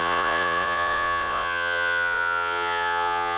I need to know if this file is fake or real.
fake